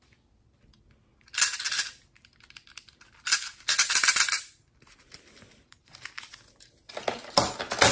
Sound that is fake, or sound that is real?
real